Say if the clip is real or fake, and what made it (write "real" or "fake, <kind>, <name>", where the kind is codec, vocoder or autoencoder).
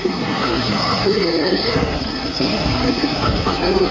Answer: fake, codec, SNAC